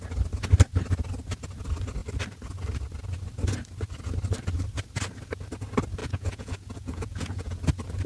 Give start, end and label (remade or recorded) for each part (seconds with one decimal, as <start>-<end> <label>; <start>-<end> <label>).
0.0-6.0 recorded; 6.0-7.6 remade; 7.6-8.1 recorded